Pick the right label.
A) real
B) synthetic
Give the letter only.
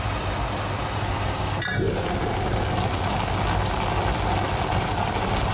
A